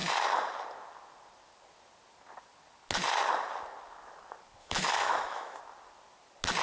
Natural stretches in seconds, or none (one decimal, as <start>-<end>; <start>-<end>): 0.0-4.6; 5.6-6.6